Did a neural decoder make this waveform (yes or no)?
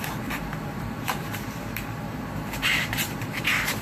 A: yes